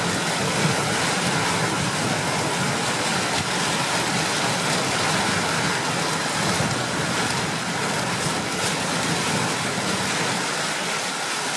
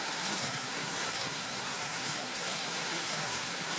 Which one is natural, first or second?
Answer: first